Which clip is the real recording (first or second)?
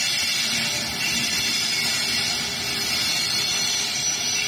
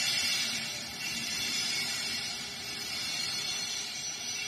first